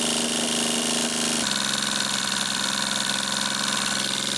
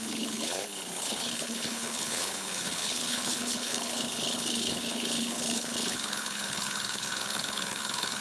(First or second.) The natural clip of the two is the first